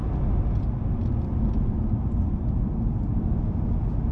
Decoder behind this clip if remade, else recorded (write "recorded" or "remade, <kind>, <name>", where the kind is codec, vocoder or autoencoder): recorded